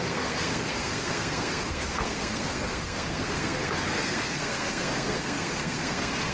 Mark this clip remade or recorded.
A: remade